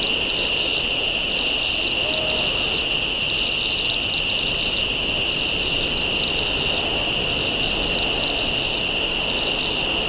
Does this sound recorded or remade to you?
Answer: recorded